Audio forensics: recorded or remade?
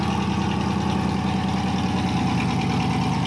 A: recorded